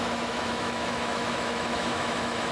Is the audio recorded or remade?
remade